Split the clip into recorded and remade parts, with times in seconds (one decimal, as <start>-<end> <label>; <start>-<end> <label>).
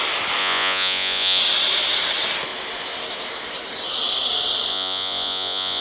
0.0-0.4 recorded; 0.4-1.4 remade; 1.4-4.7 recorded; 4.7-5.8 remade